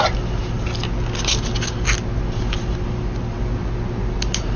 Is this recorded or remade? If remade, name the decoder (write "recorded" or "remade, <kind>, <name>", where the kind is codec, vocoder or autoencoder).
recorded